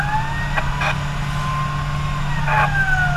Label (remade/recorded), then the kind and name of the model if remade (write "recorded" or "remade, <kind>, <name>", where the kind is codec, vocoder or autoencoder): recorded